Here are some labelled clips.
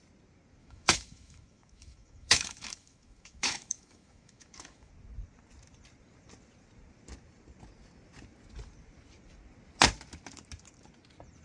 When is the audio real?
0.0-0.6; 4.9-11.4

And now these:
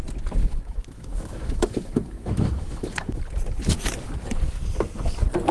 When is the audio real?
0.0-0.4; 3.2-5.5

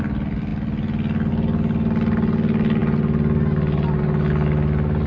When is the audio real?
0.0-5.1

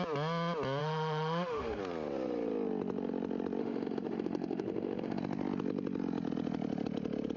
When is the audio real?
0.0-0.8; 1.8-3.6; 5.2-7.4

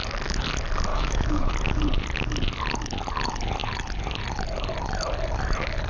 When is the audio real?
0.0-0.9; 1.5-5.9

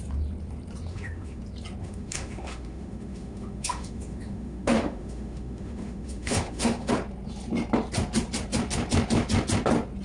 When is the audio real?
0.0-0.9; 1.4-1.8; 6.9-10.0

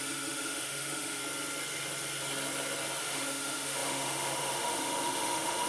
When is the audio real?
1.2-3.0

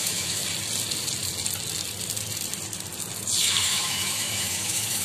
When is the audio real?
0.4-3.4